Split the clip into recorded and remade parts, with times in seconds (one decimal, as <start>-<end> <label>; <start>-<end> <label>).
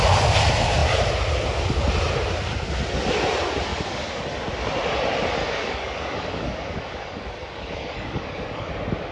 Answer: 0.0-3.7 recorded; 3.7-4.2 remade; 4.2-5.4 recorded; 5.4-8.7 remade; 8.7-9.1 recorded